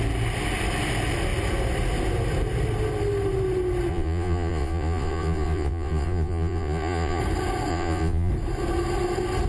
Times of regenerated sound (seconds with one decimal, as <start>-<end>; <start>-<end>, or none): 3.9-7.2; 7.7-8.3

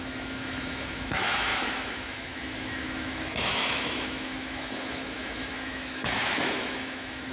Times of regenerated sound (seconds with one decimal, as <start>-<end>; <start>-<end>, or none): 0.0-7.3

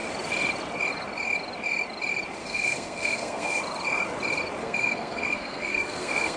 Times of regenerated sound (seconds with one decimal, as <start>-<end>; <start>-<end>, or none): 2.4-3.6; 4.6-6.4

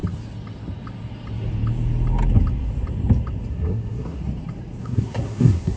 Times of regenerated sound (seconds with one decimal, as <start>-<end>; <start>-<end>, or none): 3.5-4.2; 4.8-5.8

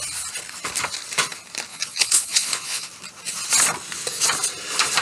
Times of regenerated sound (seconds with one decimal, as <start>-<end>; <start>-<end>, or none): 1.7-2.9

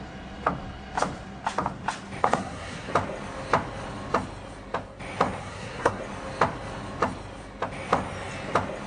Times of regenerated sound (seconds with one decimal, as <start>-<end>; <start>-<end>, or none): 2.2-2.9; 5.4-6.0

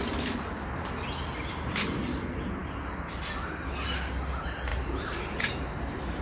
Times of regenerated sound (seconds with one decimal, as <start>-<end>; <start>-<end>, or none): 4.7-6.2